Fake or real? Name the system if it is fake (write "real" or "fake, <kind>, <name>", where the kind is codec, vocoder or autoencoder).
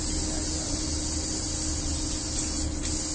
real